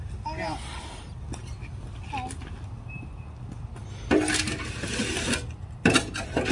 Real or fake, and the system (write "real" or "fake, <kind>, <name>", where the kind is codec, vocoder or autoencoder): real